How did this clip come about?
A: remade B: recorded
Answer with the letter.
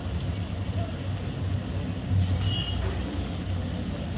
B